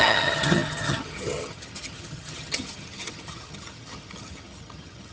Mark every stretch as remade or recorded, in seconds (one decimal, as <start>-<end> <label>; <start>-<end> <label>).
0.0-5.1 remade